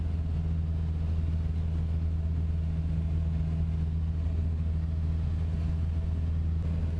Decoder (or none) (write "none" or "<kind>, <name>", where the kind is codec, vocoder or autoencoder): none